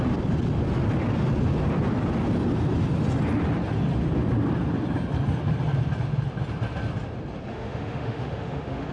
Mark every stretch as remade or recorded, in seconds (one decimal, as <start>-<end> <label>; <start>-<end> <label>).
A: 0.0-7.5 recorded; 7.5-8.9 remade